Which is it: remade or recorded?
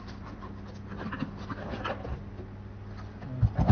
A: recorded